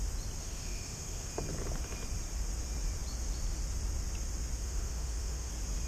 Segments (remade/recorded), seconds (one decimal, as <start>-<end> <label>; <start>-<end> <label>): 0.0-0.4 recorded; 0.4-1.3 remade; 1.3-4.6 recorded; 4.6-5.5 remade; 5.5-5.9 recorded